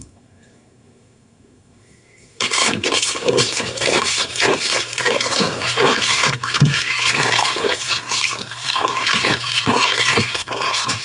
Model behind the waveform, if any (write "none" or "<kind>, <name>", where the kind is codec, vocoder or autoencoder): codec, SNAC